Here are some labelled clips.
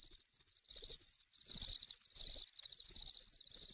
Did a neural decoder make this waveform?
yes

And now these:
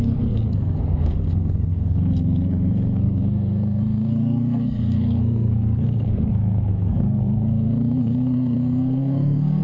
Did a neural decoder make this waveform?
yes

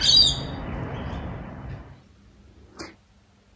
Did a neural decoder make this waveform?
no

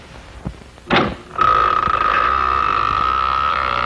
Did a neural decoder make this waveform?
no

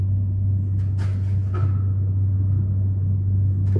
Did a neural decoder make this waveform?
no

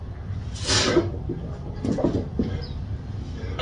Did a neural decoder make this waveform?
no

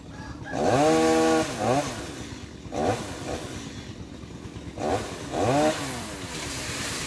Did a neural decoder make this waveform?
no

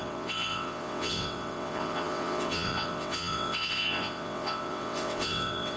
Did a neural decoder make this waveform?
yes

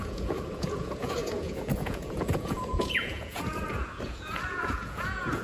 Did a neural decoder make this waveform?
yes